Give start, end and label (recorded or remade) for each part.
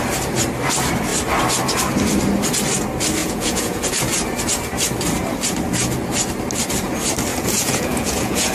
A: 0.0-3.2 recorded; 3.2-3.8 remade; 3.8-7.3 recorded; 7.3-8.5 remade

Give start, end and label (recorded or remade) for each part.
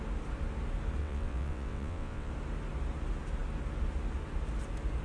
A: 0.0-1.0 recorded; 1.0-2.3 remade; 2.3-5.0 recorded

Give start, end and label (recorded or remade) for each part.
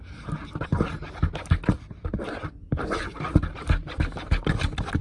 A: 0.0-5.0 recorded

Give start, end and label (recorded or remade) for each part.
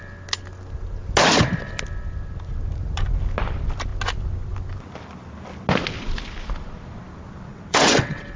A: 0.0-7.5 recorded; 7.5-8.4 remade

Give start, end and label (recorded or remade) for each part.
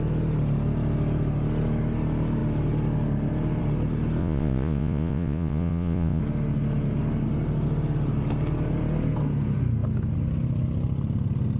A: 0.0-4.2 recorded; 4.2-6.2 remade; 6.2-11.6 recorded